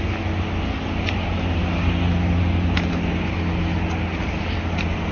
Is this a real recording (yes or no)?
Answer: yes